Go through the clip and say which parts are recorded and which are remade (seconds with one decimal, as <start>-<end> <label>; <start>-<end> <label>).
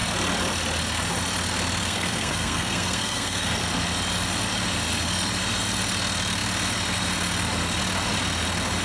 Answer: 0.0-1.8 recorded; 1.8-3.6 remade; 3.6-8.8 recorded